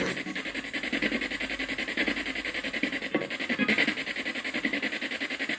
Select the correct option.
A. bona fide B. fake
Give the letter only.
A